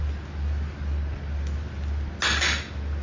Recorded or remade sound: recorded